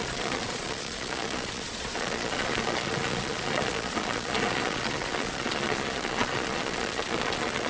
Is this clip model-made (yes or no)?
yes